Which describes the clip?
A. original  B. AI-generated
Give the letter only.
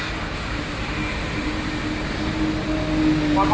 A